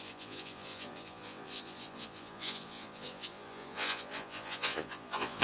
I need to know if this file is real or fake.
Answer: fake